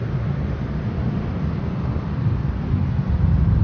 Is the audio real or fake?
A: real